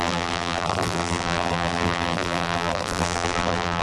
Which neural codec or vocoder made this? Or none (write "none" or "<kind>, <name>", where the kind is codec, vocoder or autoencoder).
vocoder, BigVGAN v2